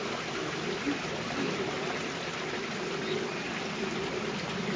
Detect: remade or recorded recorded